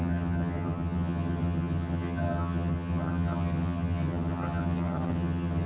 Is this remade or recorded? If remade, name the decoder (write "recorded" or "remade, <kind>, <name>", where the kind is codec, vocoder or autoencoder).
remade, vocoder, HiFi-GAN